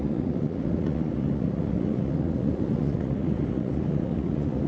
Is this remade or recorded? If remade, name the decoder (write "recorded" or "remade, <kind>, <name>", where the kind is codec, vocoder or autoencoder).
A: remade, vocoder, Vocos